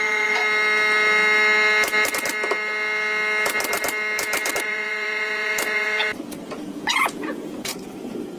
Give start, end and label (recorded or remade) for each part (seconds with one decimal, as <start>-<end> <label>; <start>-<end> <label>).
0.0-0.4 remade; 0.4-4.6 recorded; 4.6-8.4 remade